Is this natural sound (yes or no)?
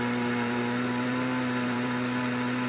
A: no